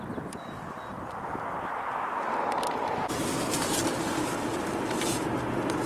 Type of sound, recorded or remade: remade